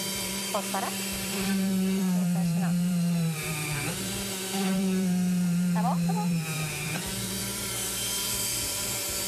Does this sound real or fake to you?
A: fake